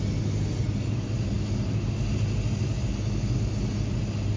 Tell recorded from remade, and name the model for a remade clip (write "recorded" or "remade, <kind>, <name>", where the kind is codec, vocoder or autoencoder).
recorded